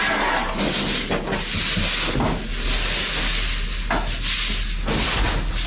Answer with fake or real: real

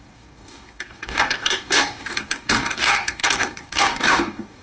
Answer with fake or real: fake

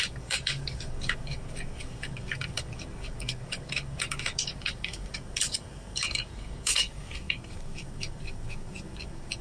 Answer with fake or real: fake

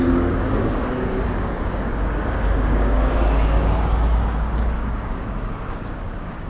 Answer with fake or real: fake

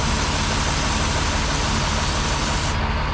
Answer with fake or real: real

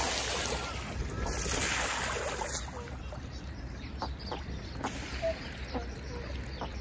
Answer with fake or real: real